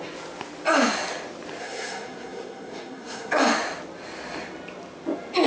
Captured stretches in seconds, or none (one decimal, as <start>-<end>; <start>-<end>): 0.0-1.6; 3.4-5.5